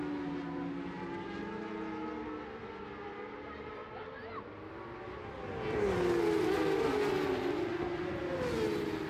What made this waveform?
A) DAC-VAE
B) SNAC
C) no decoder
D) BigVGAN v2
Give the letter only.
C